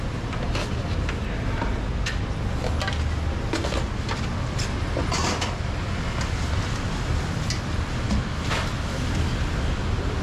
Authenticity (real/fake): real